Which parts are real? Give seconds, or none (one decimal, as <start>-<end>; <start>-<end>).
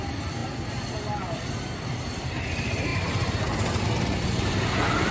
0.0-5.1